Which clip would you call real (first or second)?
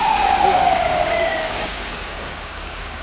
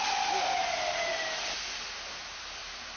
second